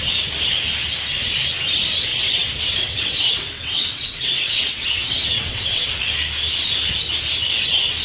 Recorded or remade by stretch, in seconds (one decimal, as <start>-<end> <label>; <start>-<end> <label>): 0.0-2.1 recorded; 2.1-6.1 remade; 6.1-8.0 recorded